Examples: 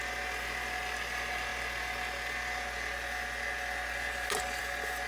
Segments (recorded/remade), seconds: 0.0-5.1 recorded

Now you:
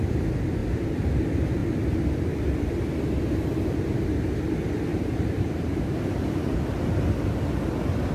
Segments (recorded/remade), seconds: 0.0-0.6 recorded; 0.6-1.1 remade; 1.1-4.9 recorded; 4.9-7.6 remade; 7.6-8.1 recorded

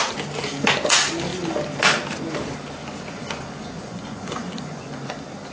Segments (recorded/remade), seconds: 0.0-2.8 recorded; 2.8-5.1 remade; 5.1-5.5 recorded

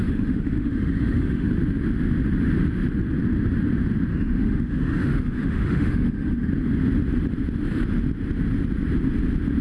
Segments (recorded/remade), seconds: 0.0-1.5 remade; 1.5-4.1 recorded; 4.1-6.5 remade; 6.5-9.6 recorded

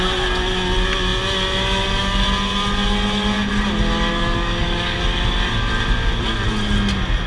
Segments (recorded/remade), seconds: 0.0-4.1 recorded; 4.1-5.0 remade; 5.0-7.3 recorded

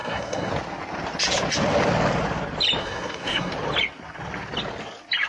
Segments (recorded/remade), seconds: 0.0-0.5 remade; 0.5-2.8 recorded; 2.8-3.5 remade; 3.5-5.3 recorded

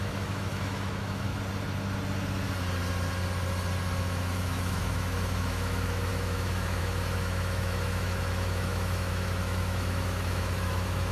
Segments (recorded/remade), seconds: 0.0-1.3 remade; 1.3-4.0 recorded; 4.0-11.1 remade

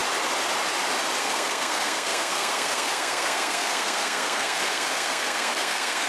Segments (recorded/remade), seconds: 0.0-1.2 recorded; 1.2-6.1 remade